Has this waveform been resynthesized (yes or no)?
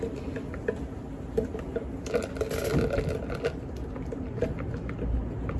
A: no